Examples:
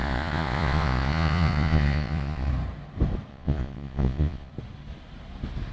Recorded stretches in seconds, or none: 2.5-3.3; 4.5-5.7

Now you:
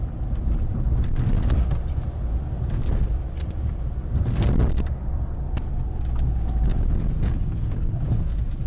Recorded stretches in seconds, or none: 0.0-6.7

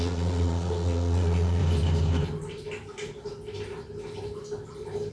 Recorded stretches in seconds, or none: 1.6-5.1

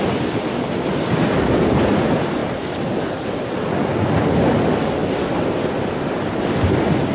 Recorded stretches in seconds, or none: 0.0-7.1